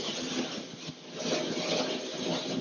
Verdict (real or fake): real